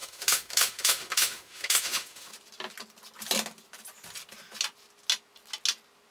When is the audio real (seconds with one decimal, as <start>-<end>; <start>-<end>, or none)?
2.3-6.1